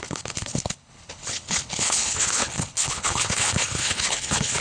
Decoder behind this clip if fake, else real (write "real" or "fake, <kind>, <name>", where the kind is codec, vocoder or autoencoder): fake, codec, HILCodec